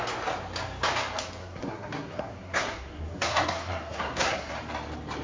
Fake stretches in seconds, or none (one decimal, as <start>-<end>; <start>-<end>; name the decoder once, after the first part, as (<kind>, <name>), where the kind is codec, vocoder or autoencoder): 1.4-4.5 (codec, SNAC)